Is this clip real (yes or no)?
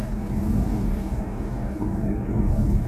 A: no